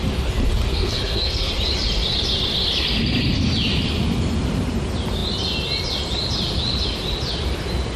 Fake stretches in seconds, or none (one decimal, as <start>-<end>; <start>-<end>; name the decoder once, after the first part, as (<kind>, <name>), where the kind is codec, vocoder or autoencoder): 0.7-1.5 (codec, SNAC)